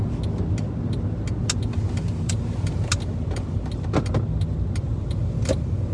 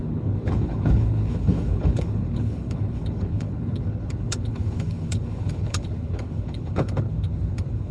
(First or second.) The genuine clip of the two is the first